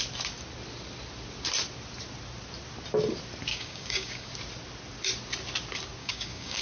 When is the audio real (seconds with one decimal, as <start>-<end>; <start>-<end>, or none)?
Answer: 0.0-3.5; 4.3-6.0